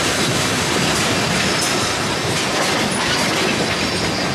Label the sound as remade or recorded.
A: recorded